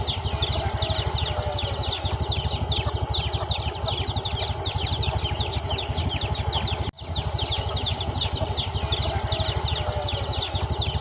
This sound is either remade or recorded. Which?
recorded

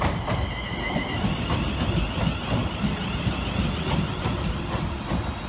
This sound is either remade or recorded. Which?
recorded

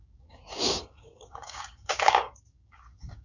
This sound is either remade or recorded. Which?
remade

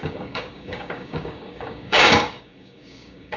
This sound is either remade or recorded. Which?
remade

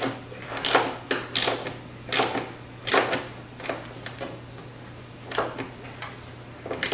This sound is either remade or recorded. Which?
recorded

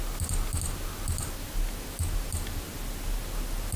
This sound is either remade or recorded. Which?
recorded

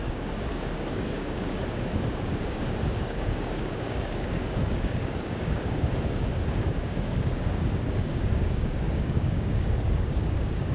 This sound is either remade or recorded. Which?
remade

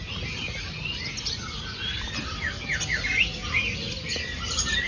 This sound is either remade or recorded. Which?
recorded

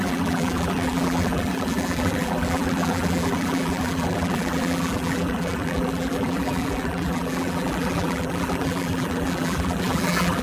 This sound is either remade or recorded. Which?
remade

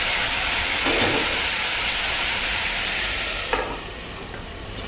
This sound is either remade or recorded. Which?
remade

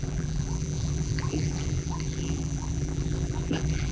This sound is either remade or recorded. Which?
remade